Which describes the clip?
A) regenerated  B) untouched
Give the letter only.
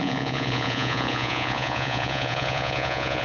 A